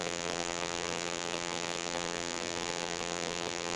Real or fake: fake